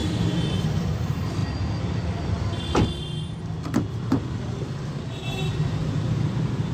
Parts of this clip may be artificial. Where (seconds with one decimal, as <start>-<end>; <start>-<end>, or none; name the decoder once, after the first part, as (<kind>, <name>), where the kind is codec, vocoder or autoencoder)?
0.0-0.8 (vocoder, BigVGAN v2)